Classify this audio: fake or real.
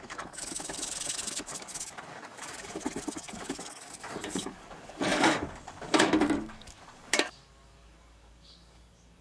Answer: fake